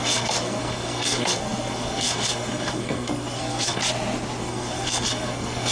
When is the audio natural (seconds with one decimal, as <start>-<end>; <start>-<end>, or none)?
3.8-4.4